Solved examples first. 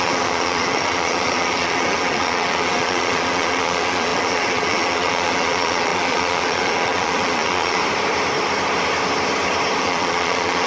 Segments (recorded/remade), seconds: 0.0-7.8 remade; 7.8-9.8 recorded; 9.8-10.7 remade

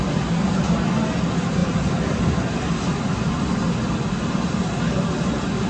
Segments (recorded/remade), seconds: 0.0-5.7 recorded

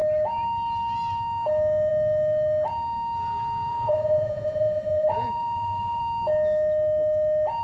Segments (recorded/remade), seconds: 0.0-3.7 recorded; 3.7-6.0 remade; 6.0-7.6 recorded